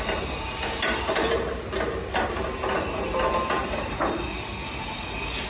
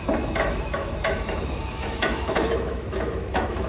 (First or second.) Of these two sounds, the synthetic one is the second